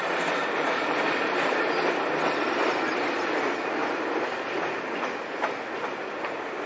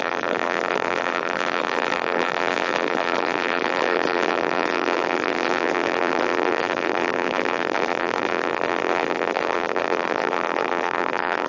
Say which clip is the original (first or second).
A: first